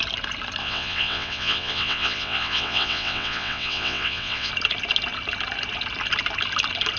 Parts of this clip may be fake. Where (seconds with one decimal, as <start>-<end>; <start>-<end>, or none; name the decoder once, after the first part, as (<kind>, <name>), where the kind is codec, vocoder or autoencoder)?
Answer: 0.6-4.5 (vocoder, WaveNeXt)